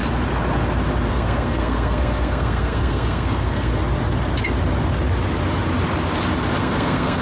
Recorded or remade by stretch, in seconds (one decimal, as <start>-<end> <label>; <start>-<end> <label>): 0.0-1.1 recorded; 1.1-3.7 remade; 3.7-6.6 recorded; 6.6-7.2 remade